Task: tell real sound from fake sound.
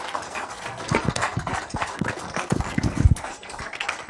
fake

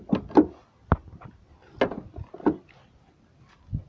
real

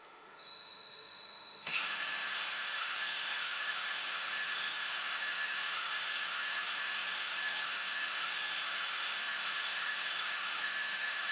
fake